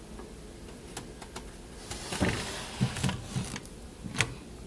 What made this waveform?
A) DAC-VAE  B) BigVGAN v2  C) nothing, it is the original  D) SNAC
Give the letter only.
C